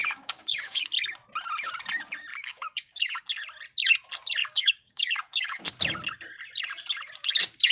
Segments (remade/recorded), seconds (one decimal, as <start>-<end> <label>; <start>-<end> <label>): 0.0-0.9 remade; 0.9-2.3 recorded; 2.3-3.2 remade; 3.2-4.4 recorded; 4.4-5.6 remade; 5.6-7.7 recorded